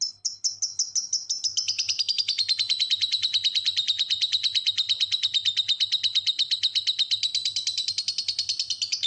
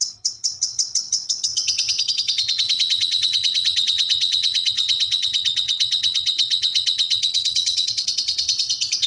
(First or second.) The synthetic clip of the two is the second